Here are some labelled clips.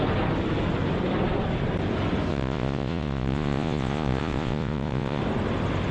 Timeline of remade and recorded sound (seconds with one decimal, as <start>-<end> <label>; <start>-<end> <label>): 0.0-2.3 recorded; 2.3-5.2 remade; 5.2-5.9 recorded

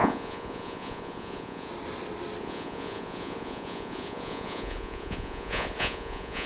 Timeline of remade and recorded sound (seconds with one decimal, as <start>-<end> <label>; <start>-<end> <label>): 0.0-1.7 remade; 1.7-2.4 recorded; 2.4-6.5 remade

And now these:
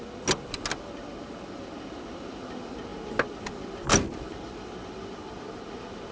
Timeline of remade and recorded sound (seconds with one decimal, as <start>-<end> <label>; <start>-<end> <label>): 0.0-6.1 recorded

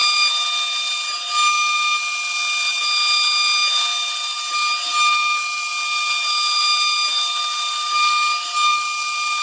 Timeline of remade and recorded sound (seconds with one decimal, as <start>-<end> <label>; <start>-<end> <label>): 0.0-9.4 recorded